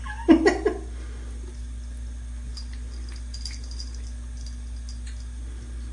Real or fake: real